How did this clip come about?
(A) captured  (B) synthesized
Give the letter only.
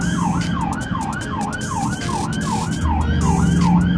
A